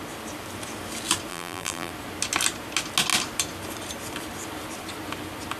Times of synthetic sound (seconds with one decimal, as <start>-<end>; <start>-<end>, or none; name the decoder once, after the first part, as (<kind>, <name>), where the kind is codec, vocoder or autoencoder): 1.3-1.9 (vocoder, BigVGAN v2)